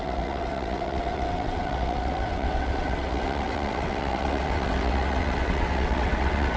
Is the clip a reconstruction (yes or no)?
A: yes